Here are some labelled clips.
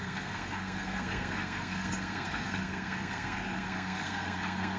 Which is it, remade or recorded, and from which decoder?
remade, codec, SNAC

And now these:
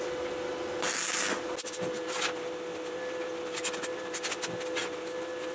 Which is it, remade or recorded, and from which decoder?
recorded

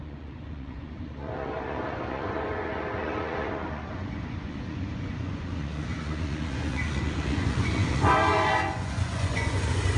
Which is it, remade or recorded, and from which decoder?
remade, vocoder, Vocos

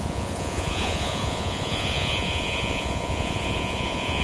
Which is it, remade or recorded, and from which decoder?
remade, vocoder, Vocos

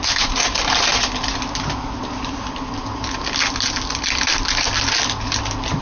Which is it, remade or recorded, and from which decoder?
recorded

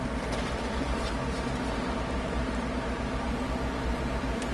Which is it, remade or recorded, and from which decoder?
remade, vocoder, BigVGAN v2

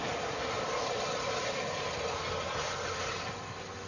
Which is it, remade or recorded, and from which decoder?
recorded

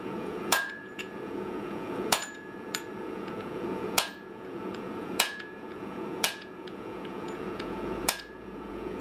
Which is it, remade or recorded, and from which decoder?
remade, vocoder, Vocos